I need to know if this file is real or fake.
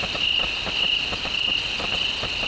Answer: real